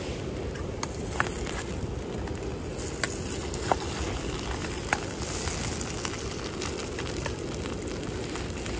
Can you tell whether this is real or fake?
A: real